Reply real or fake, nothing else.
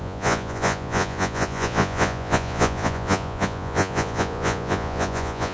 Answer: fake